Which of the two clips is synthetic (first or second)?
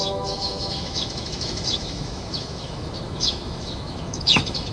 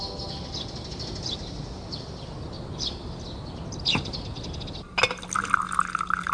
first